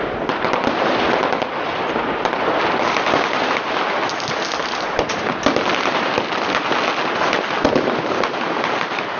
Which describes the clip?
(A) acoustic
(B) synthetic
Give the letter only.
A